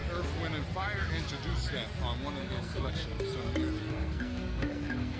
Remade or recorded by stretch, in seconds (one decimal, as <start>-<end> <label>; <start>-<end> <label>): 0.0-2.4 recorded; 2.4-2.9 remade; 2.9-3.8 recorded; 3.8-5.2 remade